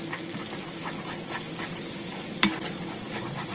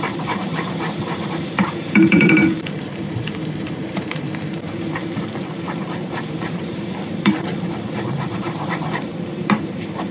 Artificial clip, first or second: second